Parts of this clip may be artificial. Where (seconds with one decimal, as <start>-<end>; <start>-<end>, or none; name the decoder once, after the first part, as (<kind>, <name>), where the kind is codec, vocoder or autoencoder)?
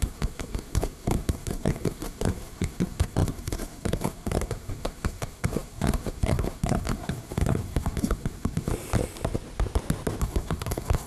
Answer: 0.0-8.7 (codec, SNAC); 10.2-11.1